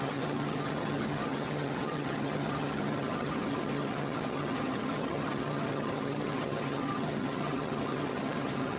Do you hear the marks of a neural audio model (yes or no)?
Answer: yes